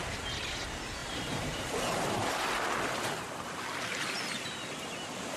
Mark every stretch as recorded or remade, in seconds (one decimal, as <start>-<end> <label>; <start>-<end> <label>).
0.0-1.0 recorded; 1.0-1.5 remade; 1.5-5.4 recorded